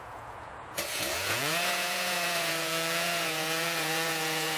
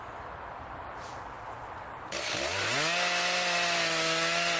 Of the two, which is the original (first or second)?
second